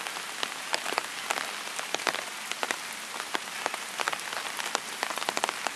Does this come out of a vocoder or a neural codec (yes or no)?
no